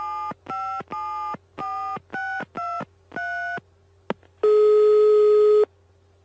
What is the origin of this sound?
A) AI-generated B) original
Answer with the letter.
B